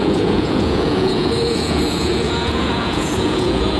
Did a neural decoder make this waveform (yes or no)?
yes